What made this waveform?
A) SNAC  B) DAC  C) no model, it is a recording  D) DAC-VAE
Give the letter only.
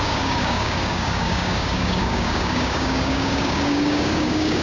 B